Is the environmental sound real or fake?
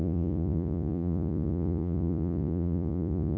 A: fake